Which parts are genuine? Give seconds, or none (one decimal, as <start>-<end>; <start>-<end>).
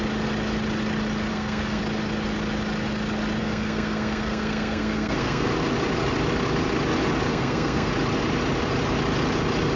0.0-1.3; 1.8-3.4; 5.5-7.3; 7.9-9.8